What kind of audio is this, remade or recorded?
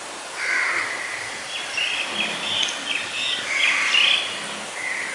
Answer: recorded